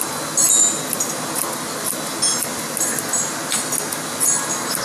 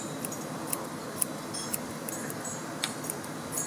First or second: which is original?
first